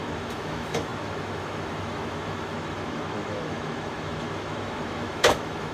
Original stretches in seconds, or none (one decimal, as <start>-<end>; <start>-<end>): none